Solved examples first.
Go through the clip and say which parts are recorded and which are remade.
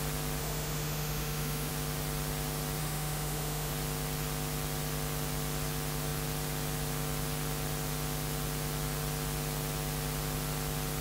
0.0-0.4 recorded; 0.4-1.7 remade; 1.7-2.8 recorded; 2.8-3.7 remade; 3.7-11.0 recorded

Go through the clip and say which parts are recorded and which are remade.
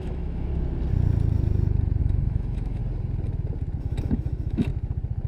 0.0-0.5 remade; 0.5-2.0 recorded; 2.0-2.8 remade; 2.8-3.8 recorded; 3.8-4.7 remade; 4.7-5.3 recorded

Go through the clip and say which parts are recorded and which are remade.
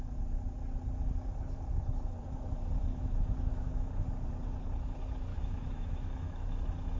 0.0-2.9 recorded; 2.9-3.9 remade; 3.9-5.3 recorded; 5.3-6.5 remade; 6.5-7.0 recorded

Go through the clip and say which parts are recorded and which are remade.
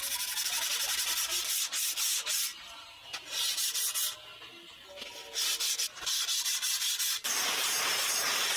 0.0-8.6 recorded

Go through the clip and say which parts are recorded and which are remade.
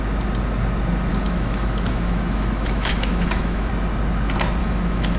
0.0-1.1 recorded; 1.1-3.7 remade; 3.7-4.6 recorded; 4.6-5.2 remade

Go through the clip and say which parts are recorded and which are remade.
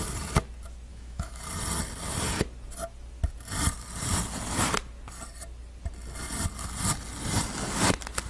0.0-0.9 recorded; 0.9-1.4 remade; 1.4-8.3 recorded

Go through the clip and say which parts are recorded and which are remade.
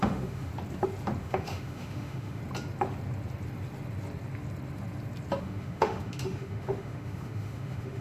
0.0-0.5 remade; 0.5-1.2 recorded; 1.2-2.4 remade; 2.4-5.4 recorded; 5.4-8.0 remade